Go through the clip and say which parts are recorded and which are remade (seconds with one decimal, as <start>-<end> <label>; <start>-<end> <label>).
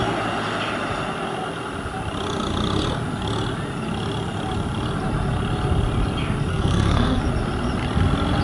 0.0-6.5 recorded; 6.5-7.2 remade; 7.2-8.4 recorded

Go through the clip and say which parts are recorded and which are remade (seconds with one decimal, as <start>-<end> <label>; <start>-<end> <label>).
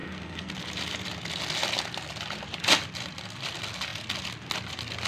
0.0-0.5 remade; 0.5-5.1 recorded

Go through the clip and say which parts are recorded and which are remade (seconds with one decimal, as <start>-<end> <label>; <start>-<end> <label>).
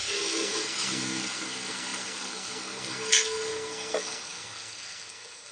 0.0-5.5 remade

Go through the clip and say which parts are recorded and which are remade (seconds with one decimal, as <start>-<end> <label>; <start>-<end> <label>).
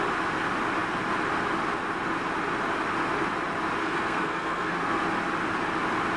0.0-3.8 recorded; 3.8-5.0 remade; 5.0-6.2 recorded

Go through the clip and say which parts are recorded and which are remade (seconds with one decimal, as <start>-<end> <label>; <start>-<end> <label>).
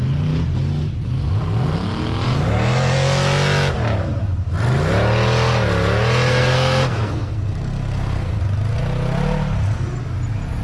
0.0-6.3 recorded; 6.3-8.4 remade; 8.4-10.6 recorded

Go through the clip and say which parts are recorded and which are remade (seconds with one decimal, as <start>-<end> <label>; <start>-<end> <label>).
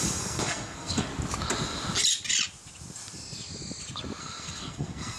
0.0-1.1 remade; 1.1-4.2 recorded; 4.2-5.2 remade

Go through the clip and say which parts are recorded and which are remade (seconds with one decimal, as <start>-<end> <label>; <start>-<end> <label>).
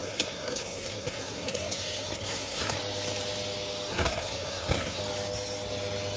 0.0-2.8 remade; 2.8-3.9 recorded; 3.9-5.0 remade; 5.0-6.2 recorded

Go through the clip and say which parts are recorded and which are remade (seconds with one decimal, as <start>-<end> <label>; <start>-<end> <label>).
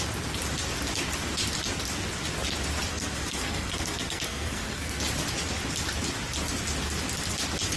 0.0-2.9 recorded; 2.9-5.0 remade; 5.0-7.8 recorded